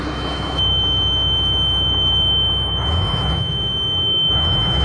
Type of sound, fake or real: fake